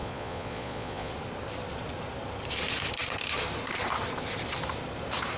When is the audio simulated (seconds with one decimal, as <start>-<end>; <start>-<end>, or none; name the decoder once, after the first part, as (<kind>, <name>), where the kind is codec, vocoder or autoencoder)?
0.0-1.1 (vocoder, Vocos)